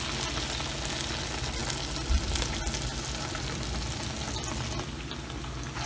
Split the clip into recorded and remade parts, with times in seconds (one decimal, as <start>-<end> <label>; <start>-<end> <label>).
0.0-5.9 recorded